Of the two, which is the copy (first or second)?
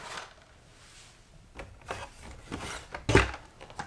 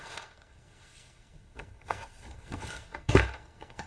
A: second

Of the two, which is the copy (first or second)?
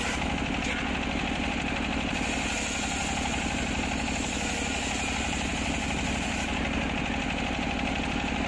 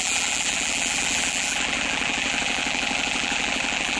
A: second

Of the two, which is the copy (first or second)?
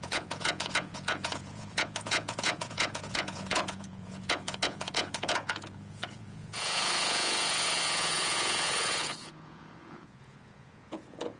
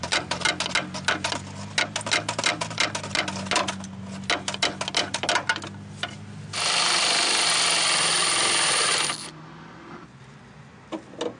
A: first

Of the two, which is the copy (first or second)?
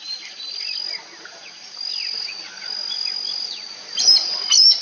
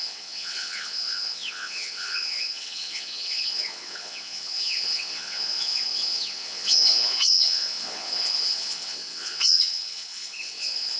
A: second